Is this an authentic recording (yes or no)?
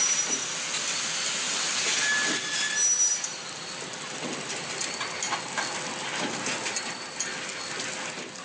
yes